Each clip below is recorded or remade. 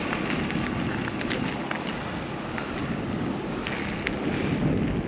recorded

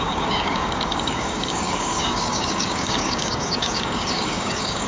remade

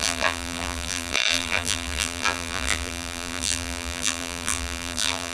remade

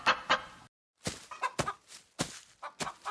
recorded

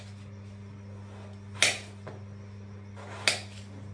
recorded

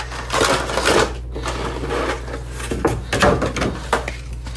recorded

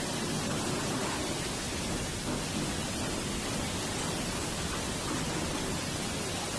recorded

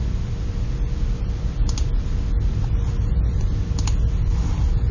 recorded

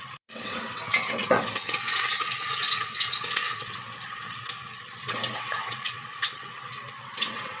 remade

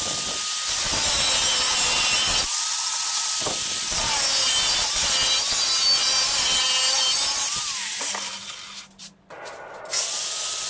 recorded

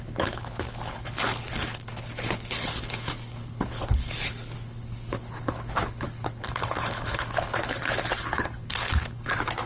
remade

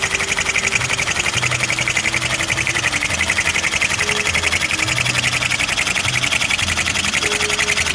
recorded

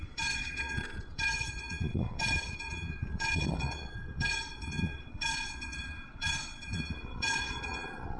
remade